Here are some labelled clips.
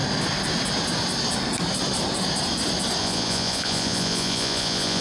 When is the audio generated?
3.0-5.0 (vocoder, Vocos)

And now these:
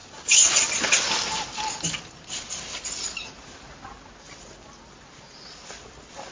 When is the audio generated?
none

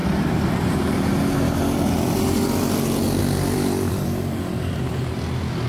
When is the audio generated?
3.2-5.7 (vocoder, BigVGAN v2)

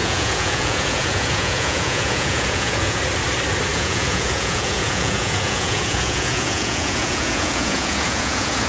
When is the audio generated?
0.0-3.0 (vocoder, Vocos); 3.7-8.7

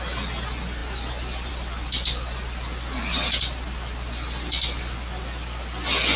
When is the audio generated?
none

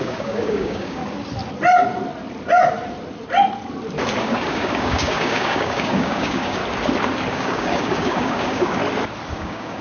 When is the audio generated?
0.0-1.0 (codec, DAC); 4.2-6.6; 7.3-8.8; 9.3-9.8

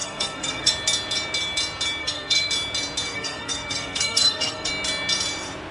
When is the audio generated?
0.0-0.7 (codec, SNAC); 2.0-2.5; 3.1-4.7

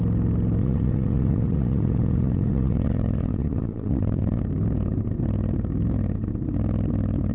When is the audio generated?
0.6-4.4 (vocoder, WaveNeXt)